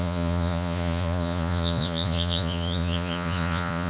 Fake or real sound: fake